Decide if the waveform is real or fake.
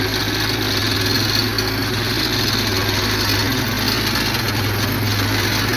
real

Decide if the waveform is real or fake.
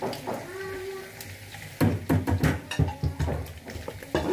real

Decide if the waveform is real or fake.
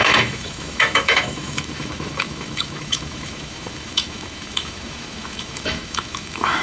fake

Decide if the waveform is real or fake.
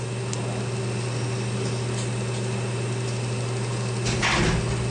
real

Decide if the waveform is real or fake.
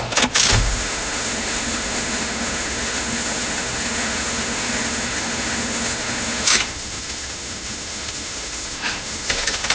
fake